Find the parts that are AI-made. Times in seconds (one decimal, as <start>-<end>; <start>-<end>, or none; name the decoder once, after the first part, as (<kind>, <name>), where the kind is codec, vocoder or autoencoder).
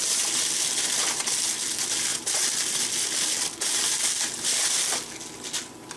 none